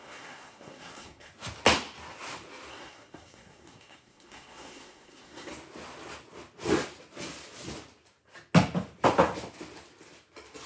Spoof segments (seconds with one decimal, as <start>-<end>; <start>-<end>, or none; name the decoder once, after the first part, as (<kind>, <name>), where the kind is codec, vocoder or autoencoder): 0.0-1.3 (codec, SNAC); 2.7-5.5